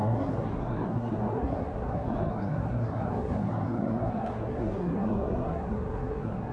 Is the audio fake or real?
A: fake